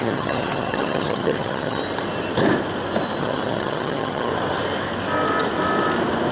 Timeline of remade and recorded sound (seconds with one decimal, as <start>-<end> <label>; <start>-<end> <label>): 0.0-1.8 remade; 1.8-3.2 recorded; 3.2-4.3 remade; 4.3-6.3 recorded